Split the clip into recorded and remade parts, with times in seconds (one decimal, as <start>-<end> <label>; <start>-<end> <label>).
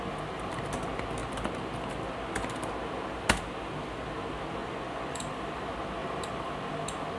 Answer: 0.0-4.6 recorded; 4.6-5.2 remade; 5.2-7.2 recorded